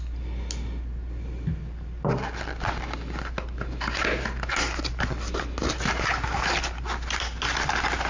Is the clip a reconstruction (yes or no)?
no